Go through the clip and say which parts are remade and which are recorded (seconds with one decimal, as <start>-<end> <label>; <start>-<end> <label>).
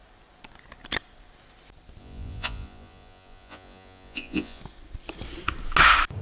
0.0-2.0 recorded; 2.0-4.6 remade; 4.6-6.2 recorded